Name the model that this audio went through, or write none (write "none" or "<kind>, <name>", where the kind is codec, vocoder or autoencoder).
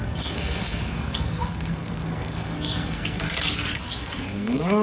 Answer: codec, SNAC